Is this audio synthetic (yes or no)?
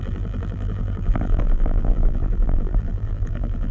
yes